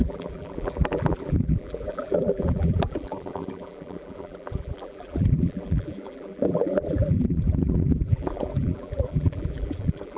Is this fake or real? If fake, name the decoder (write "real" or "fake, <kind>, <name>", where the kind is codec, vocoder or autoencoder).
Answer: fake, vocoder, BigVGAN v2